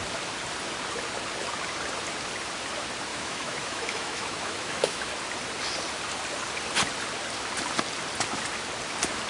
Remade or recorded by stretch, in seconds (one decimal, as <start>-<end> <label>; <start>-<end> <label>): 0.0-3.1 recorded; 3.1-5.1 remade; 5.1-9.3 recorded